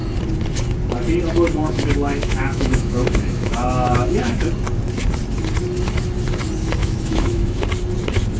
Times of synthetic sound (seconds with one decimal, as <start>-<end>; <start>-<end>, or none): 1.6-4.5; 6.8-7.6

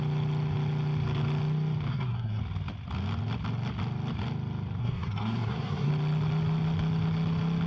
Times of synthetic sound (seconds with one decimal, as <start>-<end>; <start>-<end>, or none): 1.9-2.4; 4.8-5.9

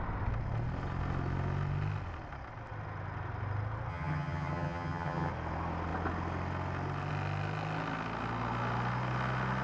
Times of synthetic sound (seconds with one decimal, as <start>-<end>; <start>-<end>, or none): 3.9-5.3

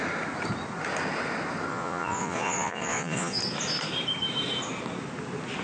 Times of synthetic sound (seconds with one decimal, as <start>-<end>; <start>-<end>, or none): 1.7-3.4

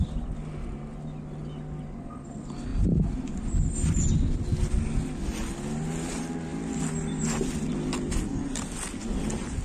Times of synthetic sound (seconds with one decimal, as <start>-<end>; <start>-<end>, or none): 2.7-3.3

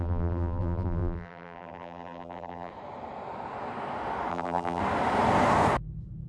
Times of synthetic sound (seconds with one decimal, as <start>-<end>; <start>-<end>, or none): 0.0-2.7; 4.3-4.8

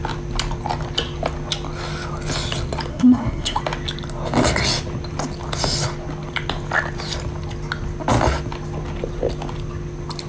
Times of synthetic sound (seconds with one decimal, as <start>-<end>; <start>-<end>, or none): 2.9-3.6

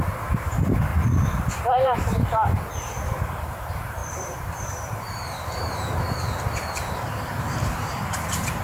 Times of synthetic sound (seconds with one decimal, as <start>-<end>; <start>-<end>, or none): 0.0-0.9; 1.6-2.1; 3.5-8.6